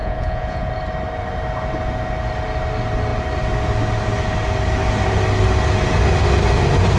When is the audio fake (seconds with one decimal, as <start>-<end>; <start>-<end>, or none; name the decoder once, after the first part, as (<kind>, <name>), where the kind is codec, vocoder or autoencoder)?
0.0-0.7 (vocoder, Vocos)